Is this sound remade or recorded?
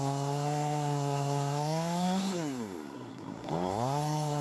remade